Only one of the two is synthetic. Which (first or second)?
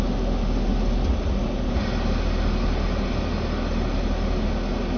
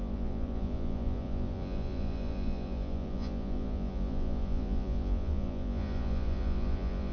second